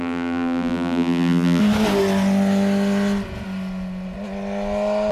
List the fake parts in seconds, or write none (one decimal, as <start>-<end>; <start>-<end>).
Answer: 0.0-1.6